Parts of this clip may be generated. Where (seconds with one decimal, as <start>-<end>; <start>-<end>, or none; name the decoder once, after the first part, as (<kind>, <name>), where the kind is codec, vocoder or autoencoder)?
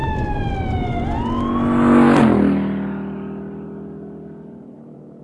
none